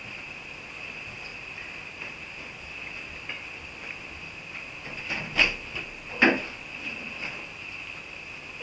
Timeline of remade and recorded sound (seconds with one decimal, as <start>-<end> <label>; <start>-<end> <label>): 0.0-8.6 recorded